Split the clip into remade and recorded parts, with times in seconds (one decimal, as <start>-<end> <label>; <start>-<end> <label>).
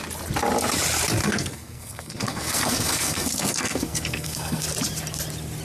0.0-1.2 recorded; 1.2-4.6 remade; 4.6-5.6 recorded